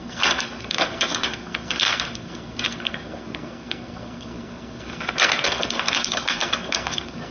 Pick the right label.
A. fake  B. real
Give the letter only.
A